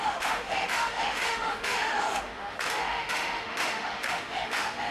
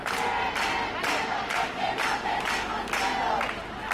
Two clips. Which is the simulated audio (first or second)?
first